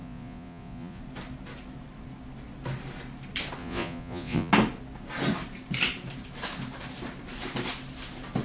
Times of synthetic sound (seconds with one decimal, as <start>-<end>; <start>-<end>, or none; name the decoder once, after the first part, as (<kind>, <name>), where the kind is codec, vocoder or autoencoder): 0.0-1.0 (vocoder, Vocos); 3.6-4.5